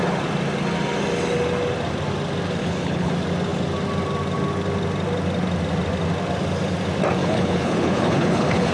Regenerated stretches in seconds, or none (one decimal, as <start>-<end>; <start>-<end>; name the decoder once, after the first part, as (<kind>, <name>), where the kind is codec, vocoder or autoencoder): 2.6-3.1 (codec, HILCodec); 7.2-8.7